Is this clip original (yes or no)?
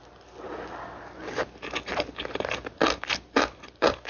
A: yes